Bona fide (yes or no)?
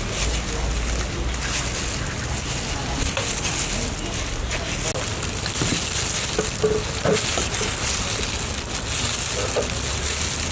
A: yes